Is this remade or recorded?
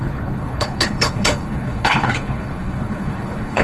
remade